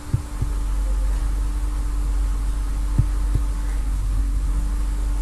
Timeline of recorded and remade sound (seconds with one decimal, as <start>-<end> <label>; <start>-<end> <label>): 0.0-3.8 recorded; 3.8-4.5 remade; 4.5-5.2 recorded